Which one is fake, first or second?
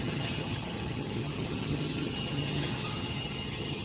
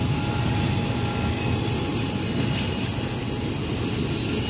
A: first